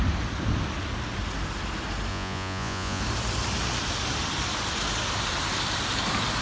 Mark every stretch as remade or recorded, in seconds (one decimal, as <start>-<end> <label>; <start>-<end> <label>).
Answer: 0.0-2.1 recorded; 2.1-3.0 remade; 3.0-6.4 recorded